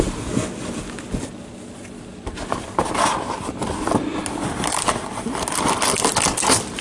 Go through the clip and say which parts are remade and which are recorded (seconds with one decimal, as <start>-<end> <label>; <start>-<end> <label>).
0.0-6.8 recorded